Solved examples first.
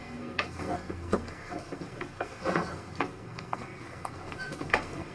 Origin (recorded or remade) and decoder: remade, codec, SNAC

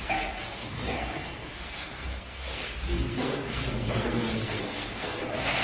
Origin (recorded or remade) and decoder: remade, codec, SNAC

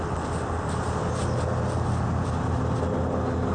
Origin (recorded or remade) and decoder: recorded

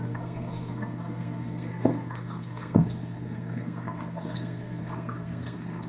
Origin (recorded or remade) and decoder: remade, codec, SNAC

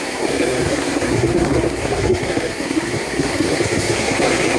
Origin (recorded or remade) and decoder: remade, codec, SNAC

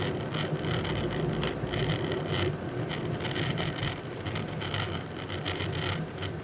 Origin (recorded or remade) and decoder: recorded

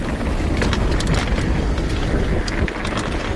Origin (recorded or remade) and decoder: recorded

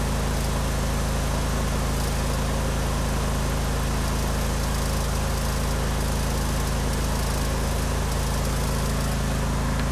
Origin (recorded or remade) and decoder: recorded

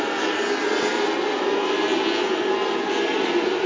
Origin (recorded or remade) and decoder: recorded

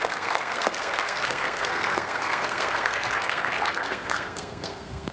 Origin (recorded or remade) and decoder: remade, codec, SNAC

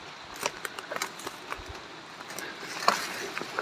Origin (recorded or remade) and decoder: recorded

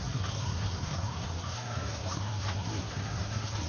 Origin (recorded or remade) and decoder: remade, codec, SNAC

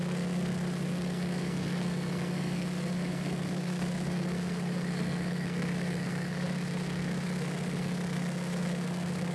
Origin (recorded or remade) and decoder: remade, codec, SNAC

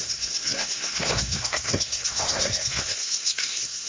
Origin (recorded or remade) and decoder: remade, codec, SNAC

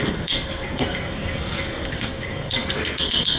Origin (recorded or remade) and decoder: remade, codec, SNAC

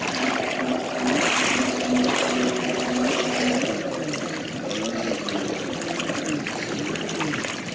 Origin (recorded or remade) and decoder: recorded